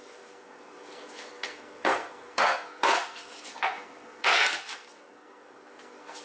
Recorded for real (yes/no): no